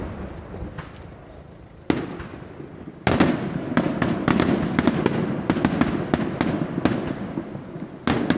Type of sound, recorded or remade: recorded